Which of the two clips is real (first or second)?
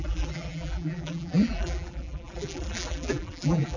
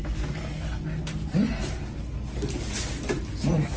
second